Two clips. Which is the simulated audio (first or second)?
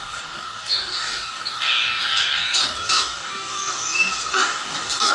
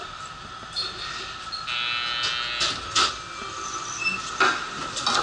first